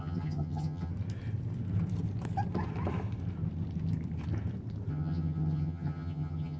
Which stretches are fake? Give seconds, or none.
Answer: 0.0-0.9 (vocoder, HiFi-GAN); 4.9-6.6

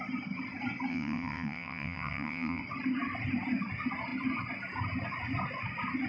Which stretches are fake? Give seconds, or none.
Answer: 0.9-2.6 (vocoder, WaveNeXt)

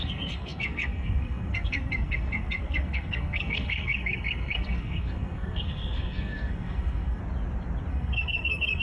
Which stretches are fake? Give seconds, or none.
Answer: 0.0-7.2 (codec, SNAC); 7.9-8.8

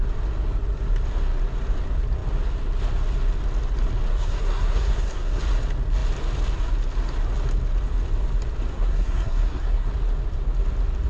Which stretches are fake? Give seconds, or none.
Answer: 4.1-5.4 (codec, SNAC); 8.7-9.9